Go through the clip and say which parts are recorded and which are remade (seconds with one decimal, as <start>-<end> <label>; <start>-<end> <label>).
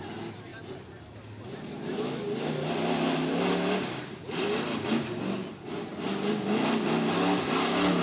0.0-8.0 recorded